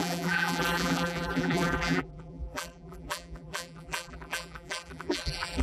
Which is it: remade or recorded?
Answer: remade